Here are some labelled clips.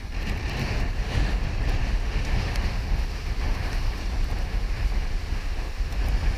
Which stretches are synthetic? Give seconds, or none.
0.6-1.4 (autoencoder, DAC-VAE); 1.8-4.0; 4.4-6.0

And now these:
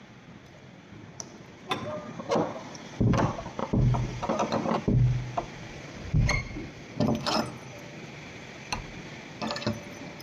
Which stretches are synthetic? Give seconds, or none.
none

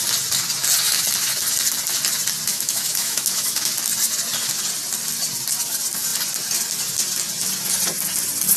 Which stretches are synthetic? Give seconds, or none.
2.5-3.7 (autoencoder, DAC-VAE)

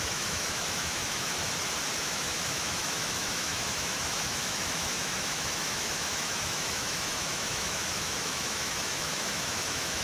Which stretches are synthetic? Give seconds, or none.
0.0-1.3 (autoencoder, DAC-VAE); 2.0-10.0

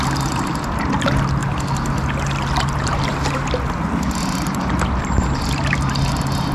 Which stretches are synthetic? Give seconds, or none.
none

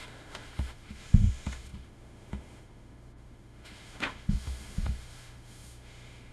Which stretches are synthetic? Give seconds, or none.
0.0-6.3 (autoencoder, DAC-VAE)

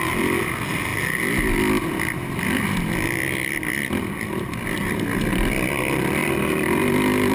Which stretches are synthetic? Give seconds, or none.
none

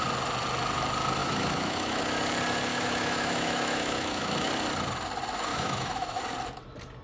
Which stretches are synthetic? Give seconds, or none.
1.2-2.0 (autoencoder, DAC-VAE); 2.7-4.5; 5.5-6.2